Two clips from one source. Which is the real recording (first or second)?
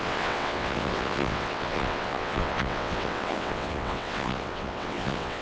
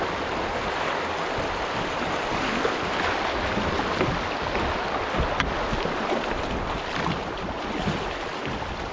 second